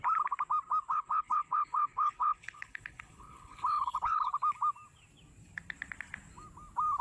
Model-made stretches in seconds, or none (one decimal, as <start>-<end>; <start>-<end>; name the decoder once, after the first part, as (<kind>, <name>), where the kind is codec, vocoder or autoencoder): 0.9-4.3 (codec, HILCodec)